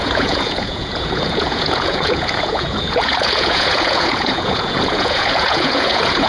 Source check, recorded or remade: remade